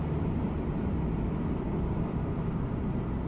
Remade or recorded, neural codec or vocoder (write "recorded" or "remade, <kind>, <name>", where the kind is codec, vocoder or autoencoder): recorded